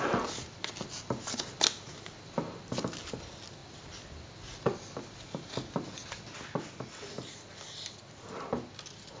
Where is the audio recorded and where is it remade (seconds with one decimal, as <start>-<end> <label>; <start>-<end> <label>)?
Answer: 0.0-9.2 recorded